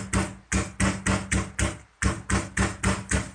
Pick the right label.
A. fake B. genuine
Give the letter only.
B